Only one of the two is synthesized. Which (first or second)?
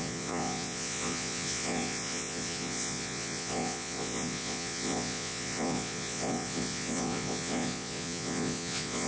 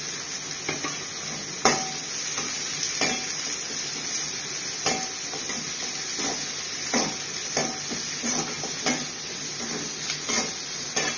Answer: first